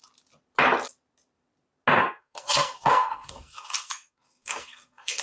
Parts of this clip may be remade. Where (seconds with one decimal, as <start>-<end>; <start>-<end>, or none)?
2.0-5.2